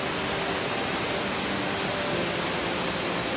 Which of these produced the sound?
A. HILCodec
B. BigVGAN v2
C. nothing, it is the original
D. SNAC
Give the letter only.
C